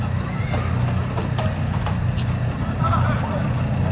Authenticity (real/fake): real